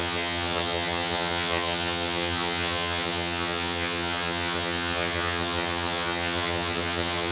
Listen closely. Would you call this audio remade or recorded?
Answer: remade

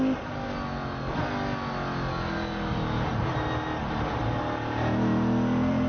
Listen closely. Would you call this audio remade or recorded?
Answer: recorded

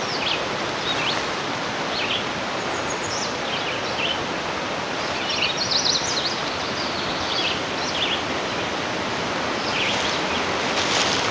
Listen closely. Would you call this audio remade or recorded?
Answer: recorded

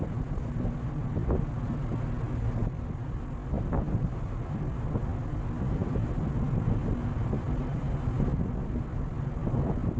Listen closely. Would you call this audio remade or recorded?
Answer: recorded